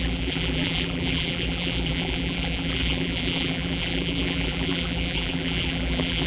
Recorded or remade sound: remade